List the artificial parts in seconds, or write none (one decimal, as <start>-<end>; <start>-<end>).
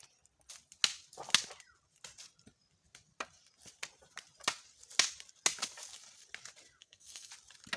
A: 6.8-7.3